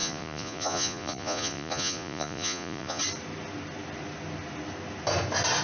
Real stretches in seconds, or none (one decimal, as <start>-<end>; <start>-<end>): 3.0-5.6